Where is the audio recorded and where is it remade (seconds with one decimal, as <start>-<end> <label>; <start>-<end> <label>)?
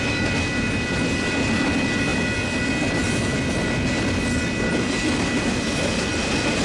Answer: 0.0-6.6 recorded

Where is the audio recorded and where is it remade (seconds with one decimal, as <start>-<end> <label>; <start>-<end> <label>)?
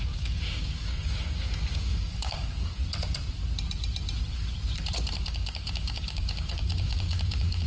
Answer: 0.0-2.8 remade; 2.8-5.2 recorded; 5.2-7.7 remade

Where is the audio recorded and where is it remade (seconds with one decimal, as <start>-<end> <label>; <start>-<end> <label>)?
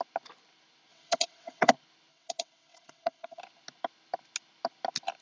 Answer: 0.0-0.9 recorded; 0.9-1.7 remade; 1.7-2.1 recorded; 2.1-3.4 remade; 3.4-5.2 recorded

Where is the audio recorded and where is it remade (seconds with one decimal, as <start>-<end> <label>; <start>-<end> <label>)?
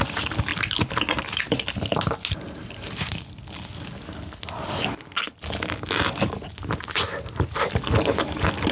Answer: 0.0-8.7 recorded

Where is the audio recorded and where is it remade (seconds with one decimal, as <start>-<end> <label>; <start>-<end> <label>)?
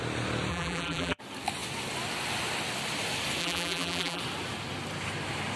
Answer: 0.0-0.5 recorded; 0.5-1.2 remade; 1.2-3.4 recorded; 3.4-4.2 remade; 4.2-5.6 recorded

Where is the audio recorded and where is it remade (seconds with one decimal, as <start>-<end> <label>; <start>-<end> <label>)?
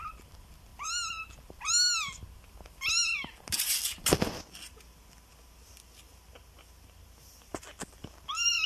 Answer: 0.0-8.7 recorded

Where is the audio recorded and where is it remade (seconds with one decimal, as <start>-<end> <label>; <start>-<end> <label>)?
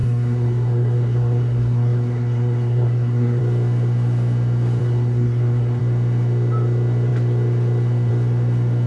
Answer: 0.0-3.4 remade; 3.4-4.8 recorded; 4.8-5.8 remade; 5.8-8.9 recorded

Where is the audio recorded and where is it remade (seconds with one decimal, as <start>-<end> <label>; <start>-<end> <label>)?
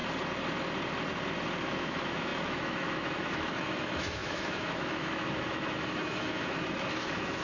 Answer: 0.0-1.6 recorded; 1.6-7.4 remade